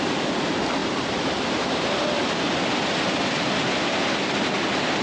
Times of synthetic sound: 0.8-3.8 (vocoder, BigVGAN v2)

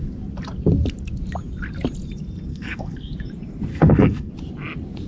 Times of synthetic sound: 2.5-3.1 (codec, SNAC); 3.7-4.3

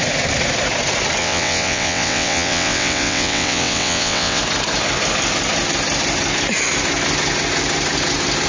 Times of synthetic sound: 1.2-4.4 (vocoder, WaveNeXt)

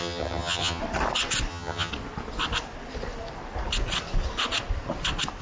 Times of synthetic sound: 0.0-0.8 (vocoder, HiFi-GAN); 1.5-1.9